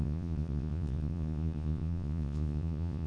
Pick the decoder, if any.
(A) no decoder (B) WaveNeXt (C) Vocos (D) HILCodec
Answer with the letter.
C